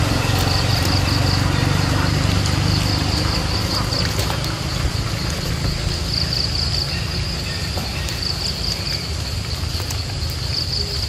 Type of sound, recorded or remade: recorded